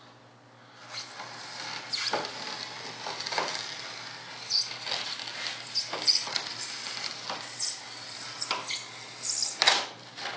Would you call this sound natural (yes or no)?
yes